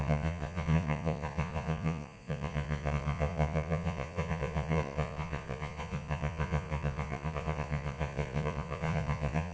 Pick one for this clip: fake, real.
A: fake